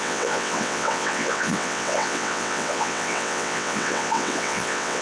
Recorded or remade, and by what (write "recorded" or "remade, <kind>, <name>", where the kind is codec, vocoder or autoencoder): remade, vocoder, WaveNeXt